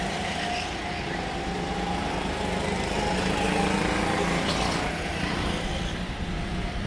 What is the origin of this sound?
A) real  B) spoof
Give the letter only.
A